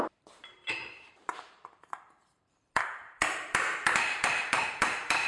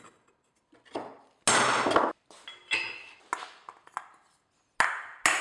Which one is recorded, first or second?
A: second